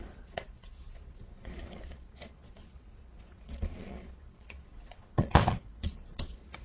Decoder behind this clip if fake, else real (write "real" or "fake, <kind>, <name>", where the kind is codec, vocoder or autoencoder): fake, vocoder, Vocos